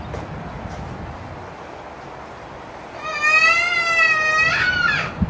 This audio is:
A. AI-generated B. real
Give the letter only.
B